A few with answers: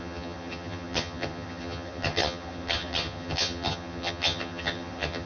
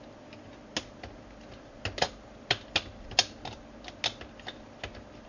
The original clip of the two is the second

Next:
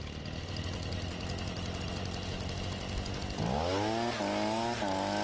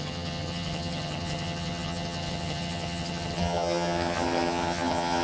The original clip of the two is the first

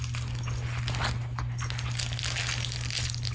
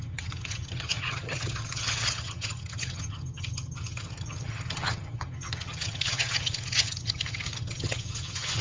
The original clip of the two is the first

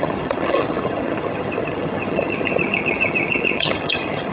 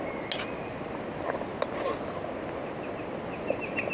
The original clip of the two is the second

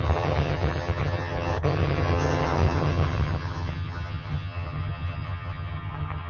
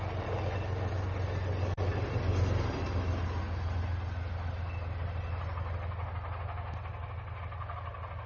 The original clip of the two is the second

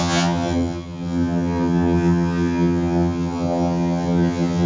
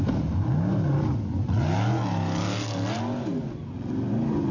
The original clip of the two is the second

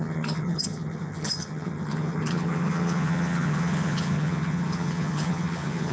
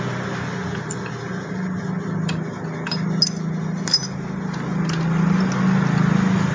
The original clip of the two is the second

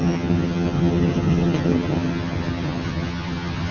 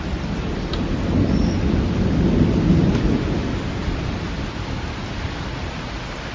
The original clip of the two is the second